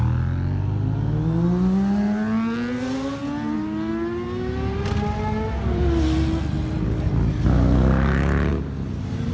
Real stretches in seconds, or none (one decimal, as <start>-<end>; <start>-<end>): 0.0-9.3